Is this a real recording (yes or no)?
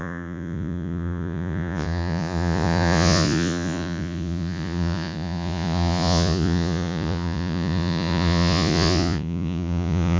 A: no